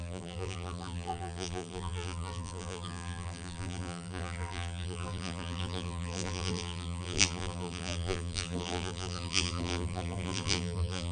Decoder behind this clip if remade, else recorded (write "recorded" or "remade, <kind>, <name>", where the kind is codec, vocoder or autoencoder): remade, vocoder, BigVGAN v2